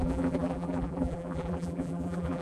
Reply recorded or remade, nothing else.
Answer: remade